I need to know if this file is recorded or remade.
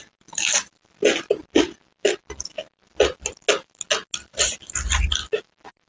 recorded